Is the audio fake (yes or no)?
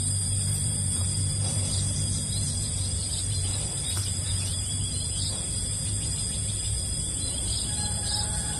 yes